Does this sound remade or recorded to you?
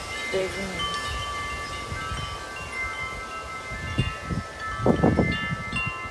recorded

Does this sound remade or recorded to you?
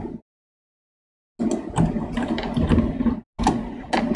recorded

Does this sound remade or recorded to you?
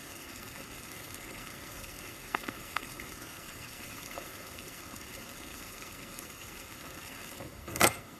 remade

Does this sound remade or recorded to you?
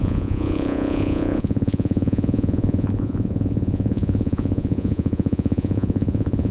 remade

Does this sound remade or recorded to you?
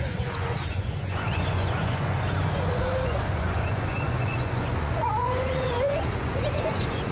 remade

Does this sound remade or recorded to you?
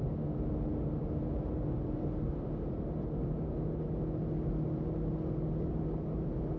recorded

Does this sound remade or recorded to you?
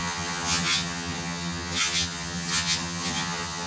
remade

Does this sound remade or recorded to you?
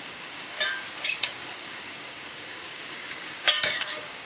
remade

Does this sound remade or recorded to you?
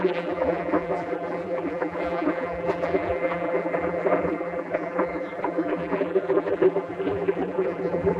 remade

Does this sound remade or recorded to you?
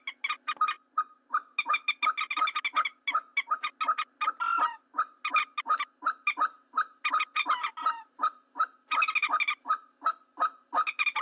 recorded